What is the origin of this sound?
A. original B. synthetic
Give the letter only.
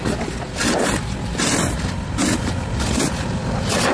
B